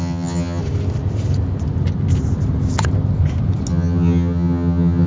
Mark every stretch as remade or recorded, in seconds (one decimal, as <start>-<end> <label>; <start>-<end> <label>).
0.0-0.6 remade; 0.6-3.7 recorded; 3.7-5.1 remade